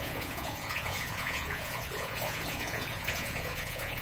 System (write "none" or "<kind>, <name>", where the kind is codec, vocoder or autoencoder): vocoder, Vocos